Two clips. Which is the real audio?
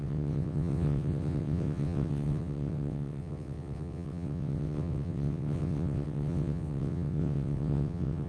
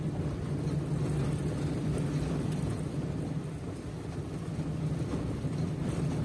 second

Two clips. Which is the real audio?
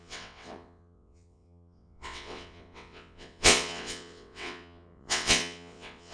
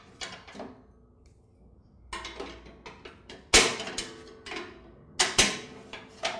second